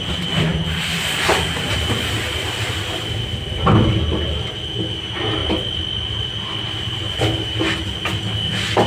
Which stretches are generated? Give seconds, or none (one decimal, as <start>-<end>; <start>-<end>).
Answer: 0.5-2.8; 5.4-6.3

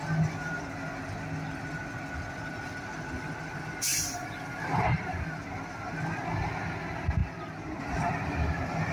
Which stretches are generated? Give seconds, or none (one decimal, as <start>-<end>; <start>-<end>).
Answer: none

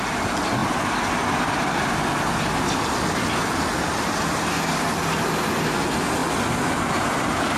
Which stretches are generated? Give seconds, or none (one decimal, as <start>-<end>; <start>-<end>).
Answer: none

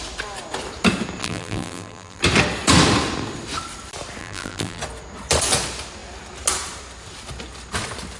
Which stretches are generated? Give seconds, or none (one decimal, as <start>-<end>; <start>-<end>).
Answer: 1.2-2.2; 4.2-4.8

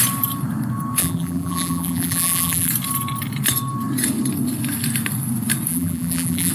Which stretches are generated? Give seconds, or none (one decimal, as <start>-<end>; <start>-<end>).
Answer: 1.0-2.7; 5.7-6.5

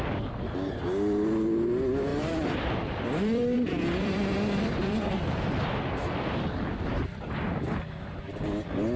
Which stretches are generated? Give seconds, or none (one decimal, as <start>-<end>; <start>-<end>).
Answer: 2.1-5.2

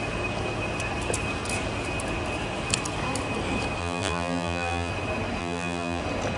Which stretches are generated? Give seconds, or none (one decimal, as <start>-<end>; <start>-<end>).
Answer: 3.8-4.9; 5.4-6.0

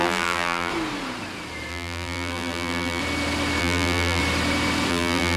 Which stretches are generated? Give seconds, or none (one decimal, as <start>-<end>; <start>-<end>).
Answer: 0.0-0.7; 1.7-3.0; 3.6-4.2; 4.9-5.4